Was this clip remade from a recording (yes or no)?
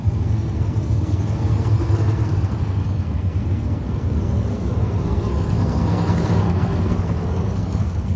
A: yes